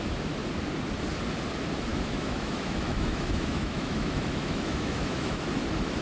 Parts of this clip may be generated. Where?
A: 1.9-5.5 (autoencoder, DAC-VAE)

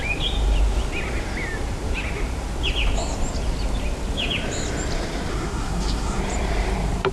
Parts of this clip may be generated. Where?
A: 5.3-6.2 (codec, SNAC)

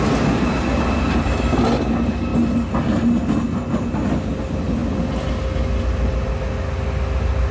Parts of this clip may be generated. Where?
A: none

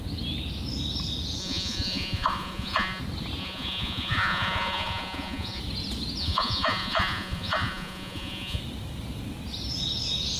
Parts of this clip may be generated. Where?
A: 1.4-3.0 (vocoder, Vocos); 3.4-5.6; 6.2-8.6